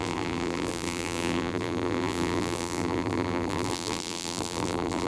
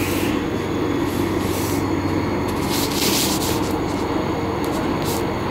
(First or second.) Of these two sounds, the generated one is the first